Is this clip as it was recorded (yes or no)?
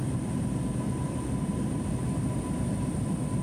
yes